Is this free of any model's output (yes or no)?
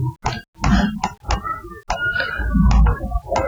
yes